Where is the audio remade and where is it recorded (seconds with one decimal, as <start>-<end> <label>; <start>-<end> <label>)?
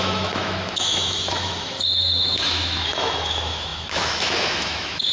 0.0-5.1 remade